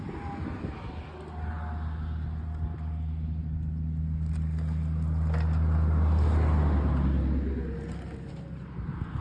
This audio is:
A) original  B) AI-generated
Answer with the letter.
A